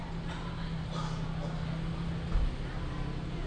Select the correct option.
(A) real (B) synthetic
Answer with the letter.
A